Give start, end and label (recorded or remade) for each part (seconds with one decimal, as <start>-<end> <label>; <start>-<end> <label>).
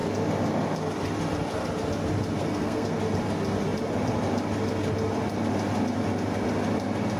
0.0-2.4 recorded; 2.4-3.0 remade; 3.0-7.2 recorded